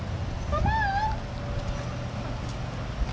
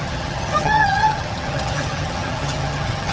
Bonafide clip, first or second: first